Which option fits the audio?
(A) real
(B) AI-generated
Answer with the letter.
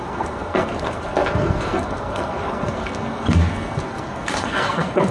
B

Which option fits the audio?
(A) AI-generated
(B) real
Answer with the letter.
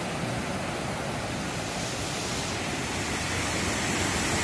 B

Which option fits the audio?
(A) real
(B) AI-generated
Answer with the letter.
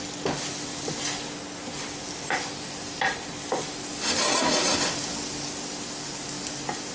A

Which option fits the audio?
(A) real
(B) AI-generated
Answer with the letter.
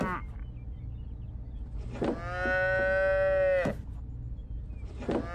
A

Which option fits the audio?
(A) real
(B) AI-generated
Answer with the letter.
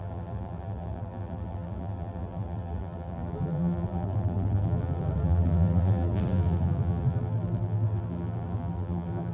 B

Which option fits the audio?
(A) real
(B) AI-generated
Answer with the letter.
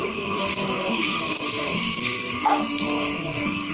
B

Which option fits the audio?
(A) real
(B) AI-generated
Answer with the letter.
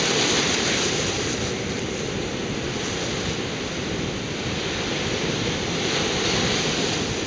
A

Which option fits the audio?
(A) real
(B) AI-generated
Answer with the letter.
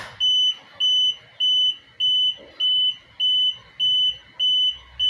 A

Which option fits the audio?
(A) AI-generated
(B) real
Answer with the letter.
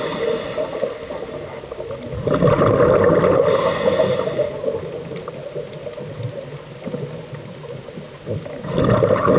B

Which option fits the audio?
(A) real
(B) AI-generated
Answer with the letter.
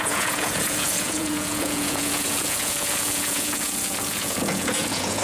B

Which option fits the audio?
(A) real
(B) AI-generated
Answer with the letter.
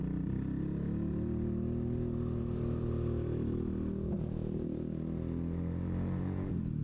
A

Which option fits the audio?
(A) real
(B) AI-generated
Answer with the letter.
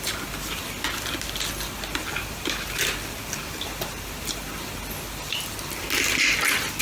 A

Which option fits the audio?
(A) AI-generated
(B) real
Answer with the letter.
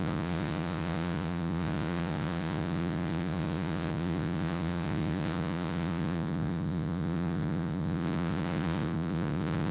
A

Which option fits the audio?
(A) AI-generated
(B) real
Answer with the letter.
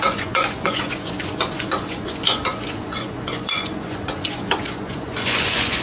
A